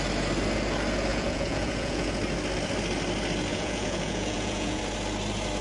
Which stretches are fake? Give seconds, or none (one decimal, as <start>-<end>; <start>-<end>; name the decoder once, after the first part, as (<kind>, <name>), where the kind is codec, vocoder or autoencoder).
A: 1.1-2.1 (vocoder, Vocos); 3.5-4.8